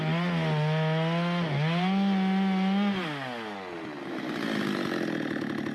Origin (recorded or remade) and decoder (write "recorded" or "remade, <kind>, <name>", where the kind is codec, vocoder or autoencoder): recorded